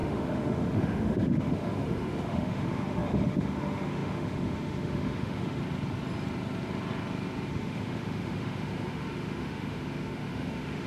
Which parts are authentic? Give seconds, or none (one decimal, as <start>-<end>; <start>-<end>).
5.6-7.5